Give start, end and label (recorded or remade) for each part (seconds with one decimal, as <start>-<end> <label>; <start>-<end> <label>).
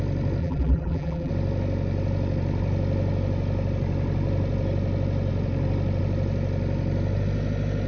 0.0-0.4 recorded; 0.4-1.3 remade; 1.3-7.9 recorded